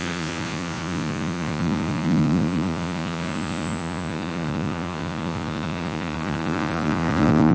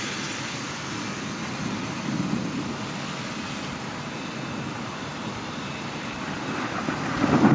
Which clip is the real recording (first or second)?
second